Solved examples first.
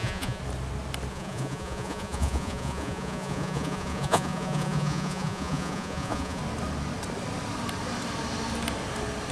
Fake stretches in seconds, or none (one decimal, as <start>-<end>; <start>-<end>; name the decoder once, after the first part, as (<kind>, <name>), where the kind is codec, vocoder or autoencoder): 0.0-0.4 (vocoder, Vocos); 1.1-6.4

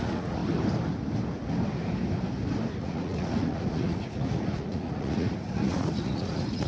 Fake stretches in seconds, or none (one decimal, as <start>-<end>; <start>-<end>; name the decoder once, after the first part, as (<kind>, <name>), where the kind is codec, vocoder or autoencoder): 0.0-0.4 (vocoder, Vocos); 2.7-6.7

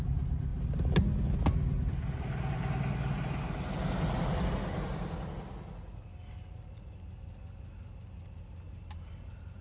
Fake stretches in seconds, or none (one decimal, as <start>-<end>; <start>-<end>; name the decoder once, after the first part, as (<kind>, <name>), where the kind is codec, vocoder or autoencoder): none

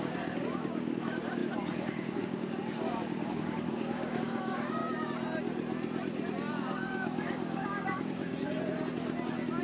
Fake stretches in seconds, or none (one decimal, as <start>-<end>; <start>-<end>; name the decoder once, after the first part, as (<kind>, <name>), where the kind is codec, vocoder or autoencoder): 0.0-4.8 (codec, DAC); 6.5-8.3

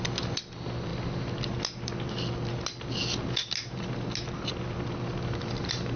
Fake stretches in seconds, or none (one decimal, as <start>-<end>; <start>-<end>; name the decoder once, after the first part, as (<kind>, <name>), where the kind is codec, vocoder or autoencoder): none

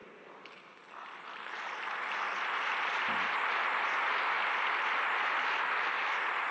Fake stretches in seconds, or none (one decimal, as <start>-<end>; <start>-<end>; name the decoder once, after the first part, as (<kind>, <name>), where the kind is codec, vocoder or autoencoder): none